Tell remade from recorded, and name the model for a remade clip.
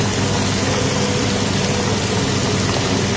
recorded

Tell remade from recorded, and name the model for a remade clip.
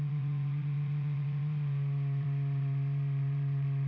remade, vocoder, Vocos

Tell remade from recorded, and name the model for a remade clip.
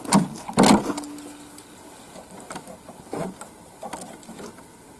recorded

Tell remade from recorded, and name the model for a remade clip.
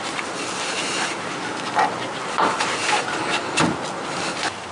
recorded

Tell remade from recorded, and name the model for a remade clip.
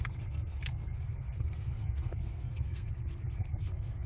remade, codec, SNAC